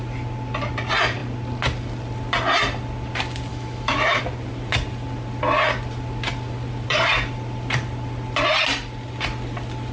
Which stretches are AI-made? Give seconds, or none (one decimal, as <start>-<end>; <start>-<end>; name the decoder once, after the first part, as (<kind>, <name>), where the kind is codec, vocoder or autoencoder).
3.5-4.2 (autoencoder, DAC-VAE)